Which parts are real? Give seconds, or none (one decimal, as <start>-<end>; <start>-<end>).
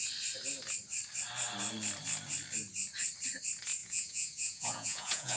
0.0-3.8